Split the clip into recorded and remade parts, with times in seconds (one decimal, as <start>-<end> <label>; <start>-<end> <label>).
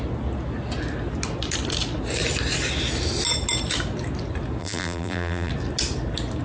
0.0-4.6 recorded; 4.6-5.5 remade; 5.5-6.4 recorded